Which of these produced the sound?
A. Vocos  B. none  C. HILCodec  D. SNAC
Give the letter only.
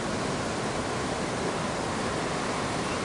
B